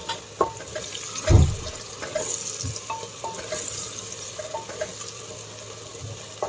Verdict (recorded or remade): recorded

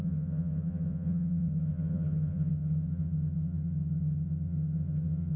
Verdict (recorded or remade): remade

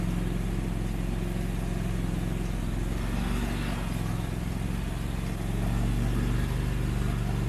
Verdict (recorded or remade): recorded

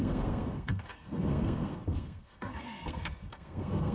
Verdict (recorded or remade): remade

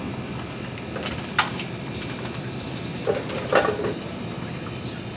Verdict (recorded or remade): recorded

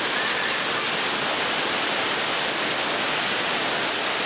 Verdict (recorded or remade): recorded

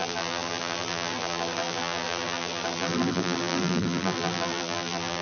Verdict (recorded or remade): remade